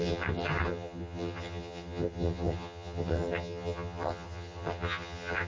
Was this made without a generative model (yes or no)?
no